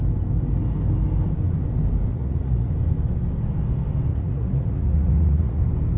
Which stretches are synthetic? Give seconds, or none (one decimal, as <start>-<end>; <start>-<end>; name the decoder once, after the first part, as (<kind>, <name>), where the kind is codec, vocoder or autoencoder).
2.1-2.7 (vocoder, Vocos); 4.1-5.6